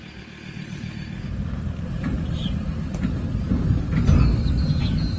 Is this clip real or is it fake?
real